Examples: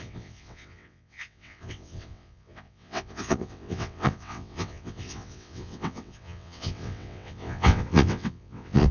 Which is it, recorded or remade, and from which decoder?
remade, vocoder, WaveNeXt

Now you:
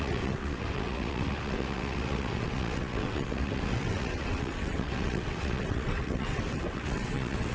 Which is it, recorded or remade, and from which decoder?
remade, vocoder, WaveNeXt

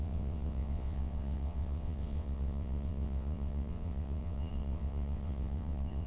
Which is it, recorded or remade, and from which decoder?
remade, vocoder, WaveNeXt